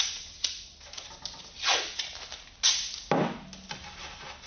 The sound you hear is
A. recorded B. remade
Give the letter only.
A